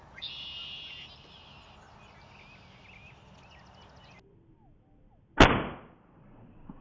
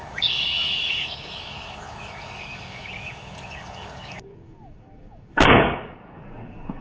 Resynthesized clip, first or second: second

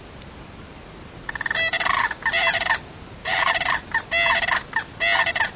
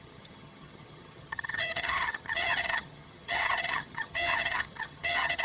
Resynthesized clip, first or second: second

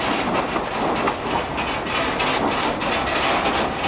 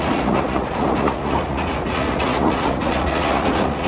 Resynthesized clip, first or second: second